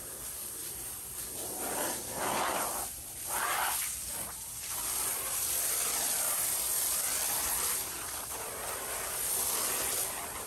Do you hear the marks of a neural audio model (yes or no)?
yes